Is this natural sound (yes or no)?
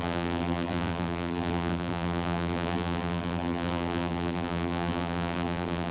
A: no